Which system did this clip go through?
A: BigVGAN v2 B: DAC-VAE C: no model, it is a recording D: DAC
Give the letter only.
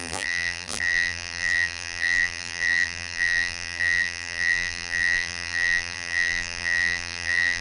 A